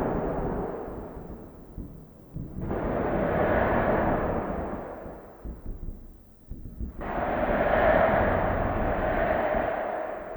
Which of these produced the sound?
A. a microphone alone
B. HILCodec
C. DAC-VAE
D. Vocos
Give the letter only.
A